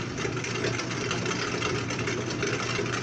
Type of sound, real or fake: real